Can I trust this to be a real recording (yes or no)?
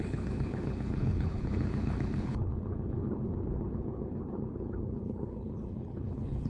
no